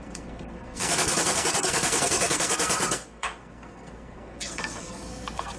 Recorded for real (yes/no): no